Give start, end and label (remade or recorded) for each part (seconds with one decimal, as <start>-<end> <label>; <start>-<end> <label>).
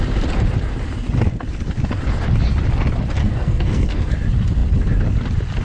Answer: 0.0-3.2 recorded; 3.2-4.1 remade; 4.1-5.6 recorded